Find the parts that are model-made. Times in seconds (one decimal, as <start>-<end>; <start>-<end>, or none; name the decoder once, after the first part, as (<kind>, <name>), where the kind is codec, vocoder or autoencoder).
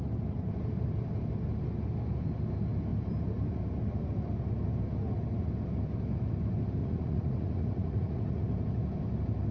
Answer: 6.8-8.4 (vocoder, Vocos)